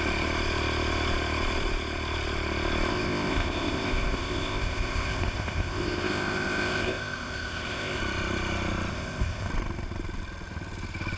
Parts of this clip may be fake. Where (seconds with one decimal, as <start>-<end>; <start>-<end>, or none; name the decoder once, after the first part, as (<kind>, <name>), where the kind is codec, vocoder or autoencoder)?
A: 2.9-8.0 (codec, ZipCodec); 8.9-9.5